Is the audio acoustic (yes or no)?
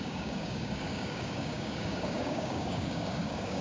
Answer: no